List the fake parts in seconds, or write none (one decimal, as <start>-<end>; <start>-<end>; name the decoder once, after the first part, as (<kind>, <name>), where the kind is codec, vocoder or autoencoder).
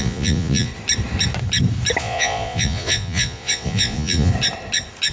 0.0-0.7 (vocoder, Vocos); 2.0-4.3